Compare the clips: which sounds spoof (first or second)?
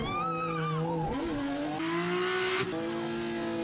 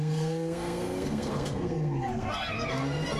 second